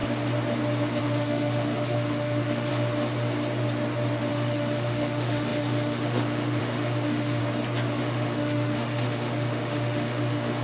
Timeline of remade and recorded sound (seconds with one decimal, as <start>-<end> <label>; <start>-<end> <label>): 0.0-1.0 recorded; 1.0-2.7 remade; 2.7-4.3 recorded; 4.3-7.4 remade; 7.4-8.0 recorded; 8.0-10.6 remade